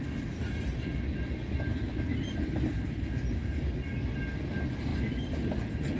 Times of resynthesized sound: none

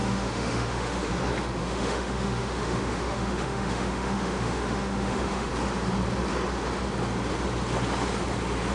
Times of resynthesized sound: 0.0-1.1 (autoencoder, DAC-VAE); 1.6-5.5